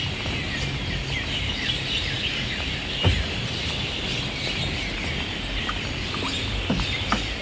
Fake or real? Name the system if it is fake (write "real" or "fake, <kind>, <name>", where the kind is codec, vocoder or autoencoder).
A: real